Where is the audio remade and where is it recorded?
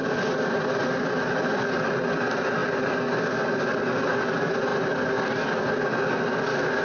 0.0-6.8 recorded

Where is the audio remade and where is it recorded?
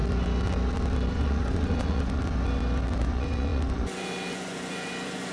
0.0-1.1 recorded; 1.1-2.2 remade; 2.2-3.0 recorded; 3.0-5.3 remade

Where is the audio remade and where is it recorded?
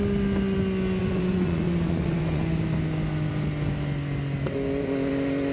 0.0-1.0 recorded; 1.0-2.4 remade; 2.4-5.5 recorded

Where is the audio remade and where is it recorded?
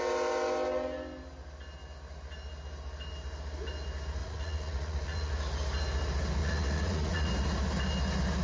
0.0-4.2 recorded; 4.2-5.3 remade; 5.3-6.4 recorded; 6.4-7.3 remade; 7.3-8.4 recorded